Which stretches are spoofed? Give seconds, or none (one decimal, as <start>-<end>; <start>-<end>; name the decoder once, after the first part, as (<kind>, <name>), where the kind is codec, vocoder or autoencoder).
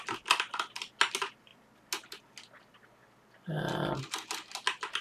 none